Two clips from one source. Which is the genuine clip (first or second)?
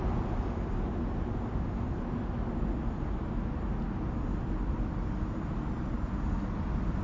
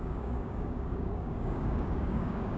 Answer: first